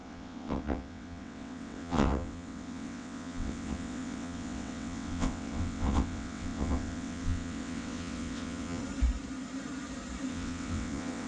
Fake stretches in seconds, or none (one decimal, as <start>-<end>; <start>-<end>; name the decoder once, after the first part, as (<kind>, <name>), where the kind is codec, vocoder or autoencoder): 0.0-8.8 (vocoder, WaveNeXt); 10.3-11.3